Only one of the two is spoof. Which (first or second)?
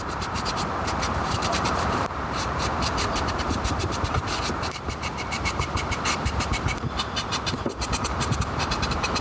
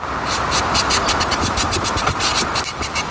first